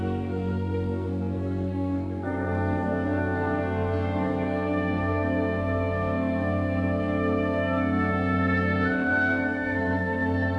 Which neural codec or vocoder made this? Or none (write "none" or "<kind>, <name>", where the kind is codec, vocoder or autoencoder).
codec, SNAC